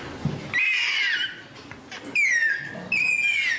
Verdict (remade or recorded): recorded